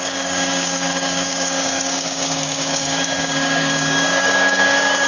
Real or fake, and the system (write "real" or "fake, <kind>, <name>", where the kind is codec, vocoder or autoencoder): fake, codec, DAC